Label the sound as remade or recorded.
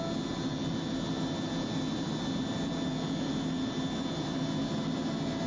recorded